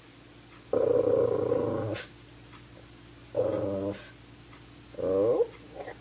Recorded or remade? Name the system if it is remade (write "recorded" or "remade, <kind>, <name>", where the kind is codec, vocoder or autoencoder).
recorded